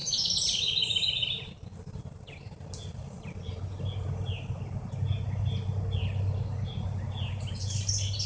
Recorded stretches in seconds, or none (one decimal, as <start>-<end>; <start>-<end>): 1.0-8.3